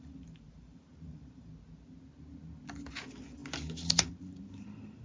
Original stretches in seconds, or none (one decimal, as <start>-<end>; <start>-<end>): 1.5-2.9; 3.4-4.1